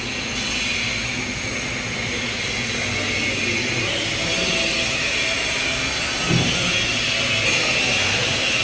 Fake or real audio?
real